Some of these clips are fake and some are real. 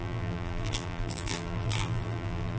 fake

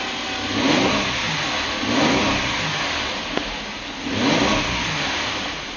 real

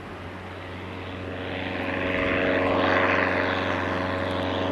real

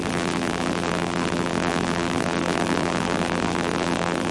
fake